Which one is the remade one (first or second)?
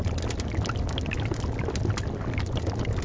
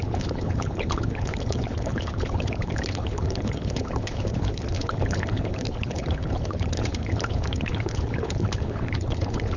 second